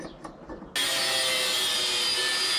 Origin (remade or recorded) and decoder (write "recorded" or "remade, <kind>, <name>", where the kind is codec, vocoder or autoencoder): recorded